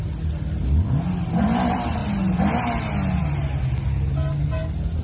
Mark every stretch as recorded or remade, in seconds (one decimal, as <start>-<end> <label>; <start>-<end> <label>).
0.0-5.0 recorded